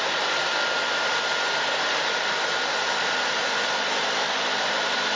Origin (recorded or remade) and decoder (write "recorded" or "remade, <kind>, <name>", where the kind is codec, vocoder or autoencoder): recorded